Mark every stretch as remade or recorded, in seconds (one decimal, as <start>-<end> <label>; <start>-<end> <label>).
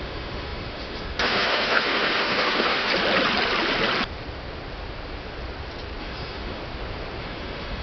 0.0-2.9 remade; 2.9-6.0 recorded; 6.0-6.6 remade; 6.6-7.2 recorded; 7.2-7.8 remade